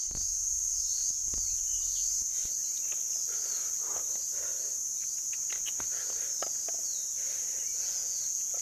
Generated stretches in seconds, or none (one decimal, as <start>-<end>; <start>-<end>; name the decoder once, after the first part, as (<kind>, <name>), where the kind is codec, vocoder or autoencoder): 7.7-8.6 (vocoder, Vocos)